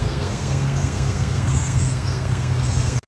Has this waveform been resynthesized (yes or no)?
yes